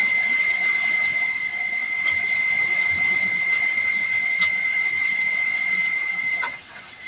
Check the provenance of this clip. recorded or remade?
remade